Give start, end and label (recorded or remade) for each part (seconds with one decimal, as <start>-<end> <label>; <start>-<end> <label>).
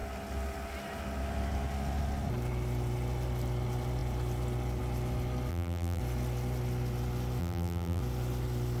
0.0-5.5 recorded; 5.5-6.0 remade; 6.0-7.4 recorded; 7.4-8.0 remade; 8.0-8.8 recorded